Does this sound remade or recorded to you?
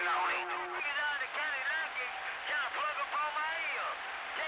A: recorded